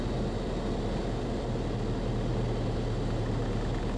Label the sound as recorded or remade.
recorded